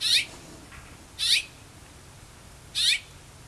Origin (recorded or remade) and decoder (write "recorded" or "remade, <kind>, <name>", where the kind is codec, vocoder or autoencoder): recorded